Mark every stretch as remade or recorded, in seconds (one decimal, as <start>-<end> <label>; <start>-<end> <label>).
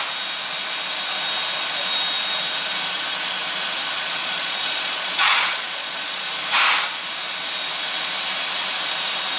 0.0-4.2 recorded; 4.2-6.2 remade; 6.2-9.4 recorded